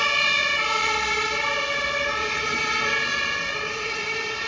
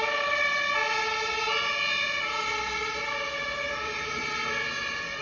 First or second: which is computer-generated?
first